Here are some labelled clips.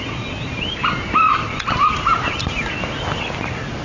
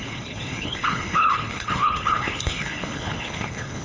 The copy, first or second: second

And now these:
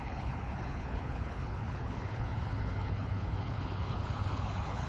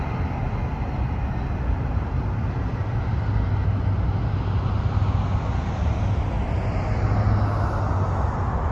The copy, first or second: first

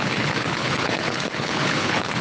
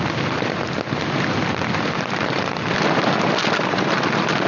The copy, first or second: first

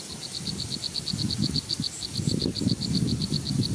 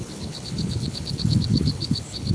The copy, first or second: second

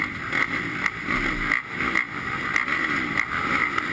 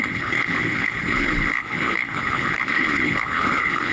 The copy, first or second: second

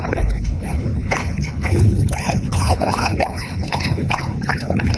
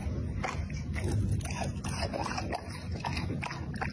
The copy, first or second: first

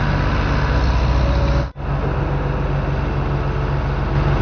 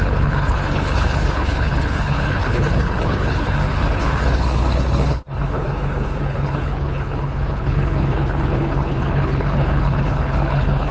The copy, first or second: second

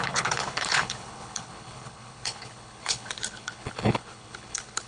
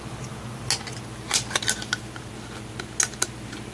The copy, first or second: first